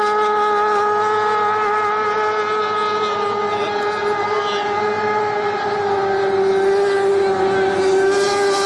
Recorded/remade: recorded